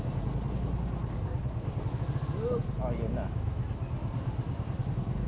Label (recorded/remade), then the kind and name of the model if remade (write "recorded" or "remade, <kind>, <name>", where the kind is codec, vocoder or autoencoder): recorded